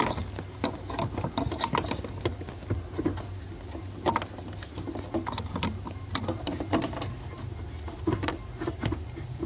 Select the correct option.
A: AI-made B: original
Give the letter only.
B